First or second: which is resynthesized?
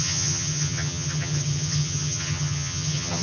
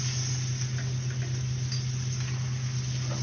first